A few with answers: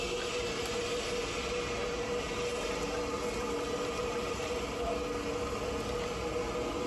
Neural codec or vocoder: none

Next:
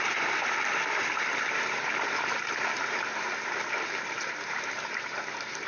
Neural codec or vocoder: vocoder, BigVGAN v2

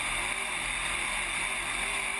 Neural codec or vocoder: none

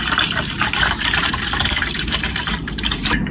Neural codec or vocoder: vocoder, BigVGAN v2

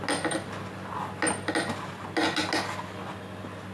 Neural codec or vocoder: none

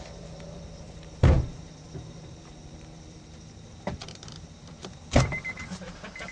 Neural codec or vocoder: vocoder, BigVGAN v2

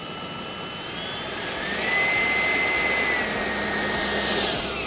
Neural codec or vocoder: none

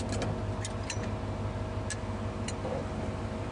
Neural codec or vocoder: none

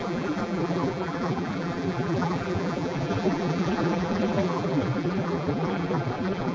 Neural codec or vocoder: vocoder, BigVGAN v2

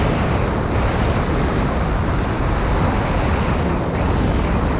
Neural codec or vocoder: none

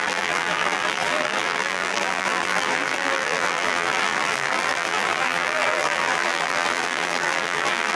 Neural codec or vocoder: vocoder, BigVGAN v2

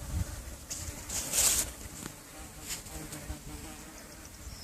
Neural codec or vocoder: none